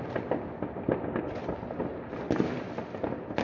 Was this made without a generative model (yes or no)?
yes